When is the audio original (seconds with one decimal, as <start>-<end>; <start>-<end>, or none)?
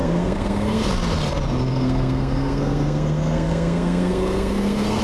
0.9-1.7